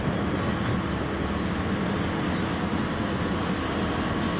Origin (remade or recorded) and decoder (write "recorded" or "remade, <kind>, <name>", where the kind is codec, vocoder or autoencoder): recorded